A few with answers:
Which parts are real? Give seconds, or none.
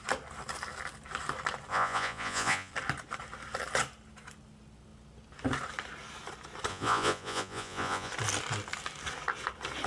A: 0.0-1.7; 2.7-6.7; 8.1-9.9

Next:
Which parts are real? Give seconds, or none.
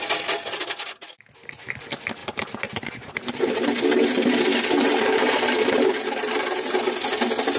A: 0.0-2.2; 6.8-7.6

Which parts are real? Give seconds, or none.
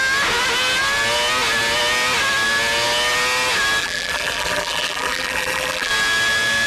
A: 0.0-3.8; 5.9-6.7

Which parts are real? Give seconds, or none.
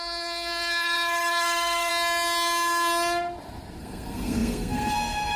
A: 1.9-3.8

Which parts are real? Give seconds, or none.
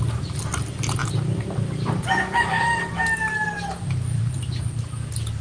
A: 0.0-5.4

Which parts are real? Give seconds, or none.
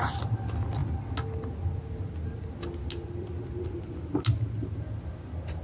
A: 0.0-5.6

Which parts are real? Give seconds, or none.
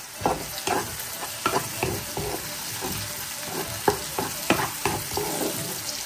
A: 0.0-0.5; 2.1-4.1; 4.9-6.1